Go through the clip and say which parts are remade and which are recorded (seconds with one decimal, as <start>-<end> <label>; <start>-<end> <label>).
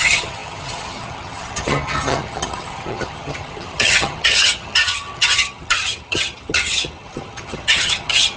0.0-8.4 remade